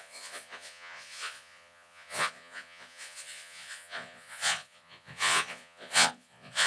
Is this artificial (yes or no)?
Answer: yes